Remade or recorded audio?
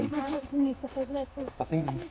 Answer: remade